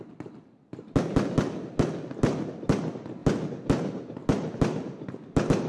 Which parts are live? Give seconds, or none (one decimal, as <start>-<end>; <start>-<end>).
0.0-5.7